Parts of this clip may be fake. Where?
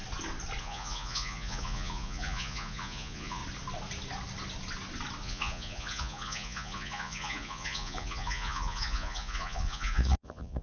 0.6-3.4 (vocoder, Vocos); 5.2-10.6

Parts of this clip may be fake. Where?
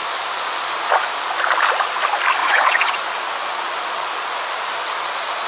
2.4-3.1 (vocoder, Vocos)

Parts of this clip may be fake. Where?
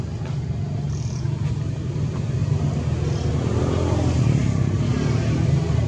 none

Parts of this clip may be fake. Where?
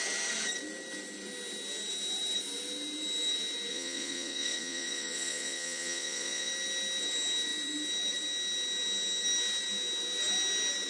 3.7-6.5 (vocoder, Vocos)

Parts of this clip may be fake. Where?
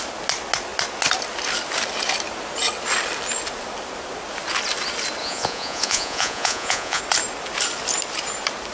5.2-7.0 (vocoder, Vocos)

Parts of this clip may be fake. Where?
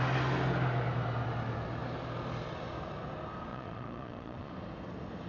3.5-4.5 (vocoder, Vocos)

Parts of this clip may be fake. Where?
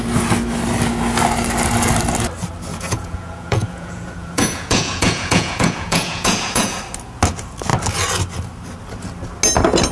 2.7-6.8 (vocoder, Vocos)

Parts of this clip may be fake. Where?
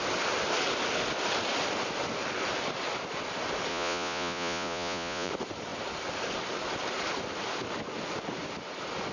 3.7-5.3 (vocoder, Vocos)